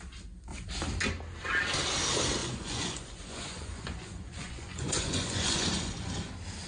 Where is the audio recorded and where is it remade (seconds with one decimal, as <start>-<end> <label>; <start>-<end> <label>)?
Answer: 0.0-2.4 recorded; 2.4-6.3 remade; 6.3-6.7 recorded